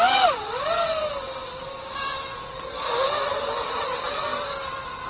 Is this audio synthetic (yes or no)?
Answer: no